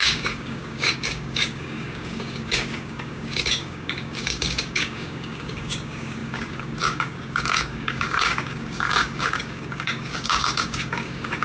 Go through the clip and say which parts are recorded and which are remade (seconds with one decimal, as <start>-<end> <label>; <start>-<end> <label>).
0.0-11.4 remade